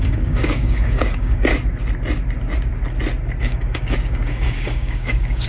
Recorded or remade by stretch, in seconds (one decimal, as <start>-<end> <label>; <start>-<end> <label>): 0.0-1.5 remade; 1.5-3.4 recorded; 3.4-5.5 remade